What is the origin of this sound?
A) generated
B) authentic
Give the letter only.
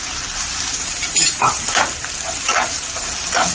B